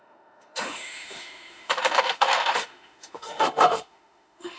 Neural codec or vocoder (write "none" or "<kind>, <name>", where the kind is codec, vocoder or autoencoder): autoencoder, DAC-VAE